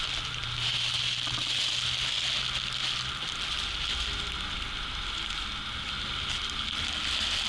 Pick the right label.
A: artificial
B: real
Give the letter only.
B